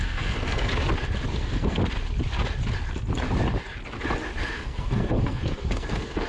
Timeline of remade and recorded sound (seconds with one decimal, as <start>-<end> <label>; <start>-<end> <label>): 0.0-0.7 remade; 0.7-1.3 recorded; 1.3-1.8 remade; 1.8-4.5 recorded; 4.5-6.3 remade